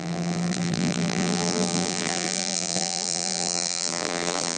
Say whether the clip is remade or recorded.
remade